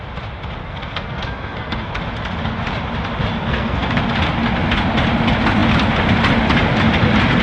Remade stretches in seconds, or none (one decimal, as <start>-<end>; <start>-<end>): 0.6-1.9; 3.4-4.0